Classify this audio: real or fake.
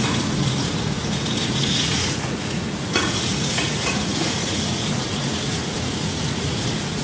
fake